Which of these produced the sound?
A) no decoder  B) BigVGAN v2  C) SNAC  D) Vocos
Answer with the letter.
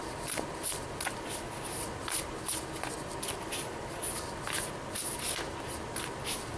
A